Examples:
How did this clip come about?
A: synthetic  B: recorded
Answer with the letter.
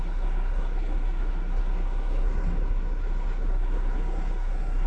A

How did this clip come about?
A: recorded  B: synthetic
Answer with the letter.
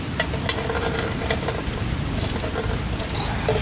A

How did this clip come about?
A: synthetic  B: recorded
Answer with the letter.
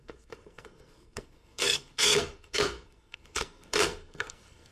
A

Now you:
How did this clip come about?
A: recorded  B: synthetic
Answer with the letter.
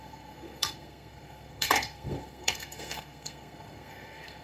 B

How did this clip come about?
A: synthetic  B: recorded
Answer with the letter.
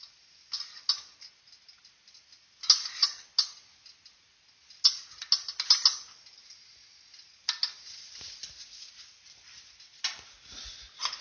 B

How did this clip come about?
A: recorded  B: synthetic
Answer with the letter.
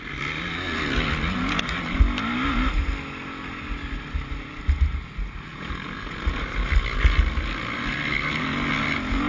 A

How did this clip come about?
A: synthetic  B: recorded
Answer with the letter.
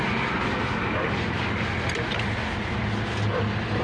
B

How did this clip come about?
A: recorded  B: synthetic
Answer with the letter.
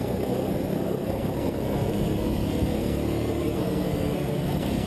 B